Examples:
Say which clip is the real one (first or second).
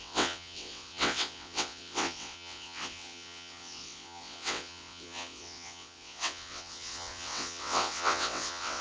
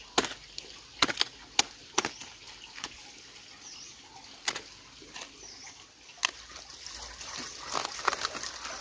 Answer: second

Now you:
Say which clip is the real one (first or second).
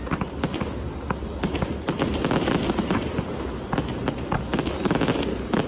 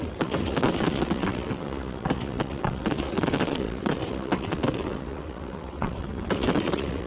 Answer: first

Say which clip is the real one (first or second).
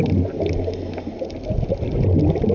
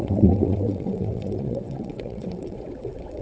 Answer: first